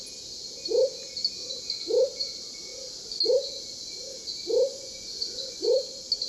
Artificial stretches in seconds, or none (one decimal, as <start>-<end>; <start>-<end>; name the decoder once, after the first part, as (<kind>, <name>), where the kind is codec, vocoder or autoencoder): 4.7-5.7 (vocoder, Vocos)